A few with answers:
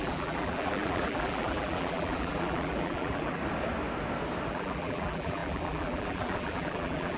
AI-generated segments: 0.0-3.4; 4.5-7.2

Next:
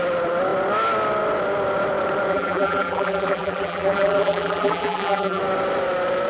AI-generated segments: 2.3-5.4

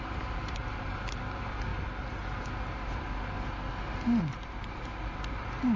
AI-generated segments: 0.0-1.7; 4.2-5.8

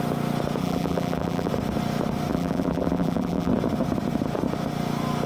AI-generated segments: 0.6-1.5; 2.3-3.5

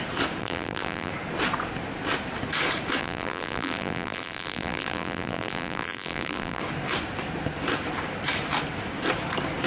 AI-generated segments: 0.4-1.1; 3.0-6.6

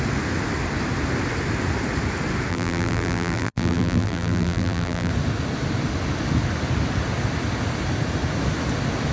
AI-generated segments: 2.5-5.1